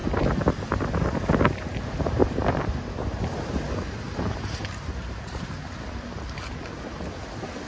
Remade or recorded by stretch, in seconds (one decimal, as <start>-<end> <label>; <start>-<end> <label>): 0.0-2.2 recorded; 2.2-6.1 remade; 6.1-7.7 recorded